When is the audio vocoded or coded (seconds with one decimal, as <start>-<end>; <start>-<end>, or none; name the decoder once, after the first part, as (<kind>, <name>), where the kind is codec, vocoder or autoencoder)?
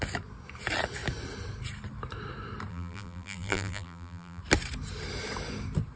2.7-4.4 (vocoder, BigVGAN v2)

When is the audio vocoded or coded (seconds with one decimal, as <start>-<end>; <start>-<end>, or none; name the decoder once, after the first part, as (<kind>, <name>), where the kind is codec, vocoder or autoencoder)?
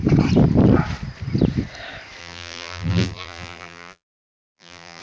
2.2-5.0 (vocoder, BigVGAN v2)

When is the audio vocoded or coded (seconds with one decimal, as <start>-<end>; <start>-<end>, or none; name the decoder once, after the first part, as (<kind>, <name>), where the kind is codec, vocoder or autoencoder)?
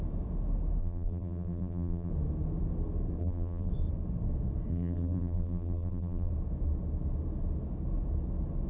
0.8-2.1 (vocoder, BigVGAN v2); 3.2-3.7; 4.7-6.3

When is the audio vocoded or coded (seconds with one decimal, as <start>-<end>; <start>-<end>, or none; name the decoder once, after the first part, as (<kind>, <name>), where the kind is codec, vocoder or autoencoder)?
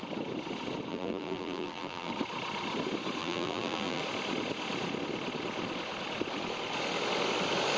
0.9-2.1 (vocoder, BigVGAN v2); 3.2-4.0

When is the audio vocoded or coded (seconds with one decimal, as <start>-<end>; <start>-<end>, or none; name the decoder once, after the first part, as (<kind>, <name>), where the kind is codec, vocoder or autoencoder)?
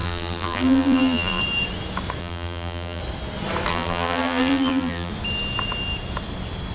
0.0-1.4 (vocoder, BigVGAN v2); 2.2-3.0; 3.7-5.1